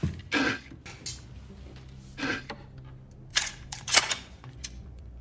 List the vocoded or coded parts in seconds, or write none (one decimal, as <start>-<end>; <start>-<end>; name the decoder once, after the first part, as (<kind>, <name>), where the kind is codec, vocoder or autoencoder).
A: 3.3-5.2 (vocoder, Vocos)